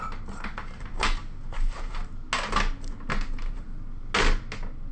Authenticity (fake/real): real